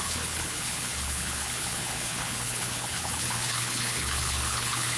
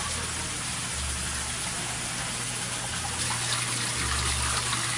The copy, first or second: first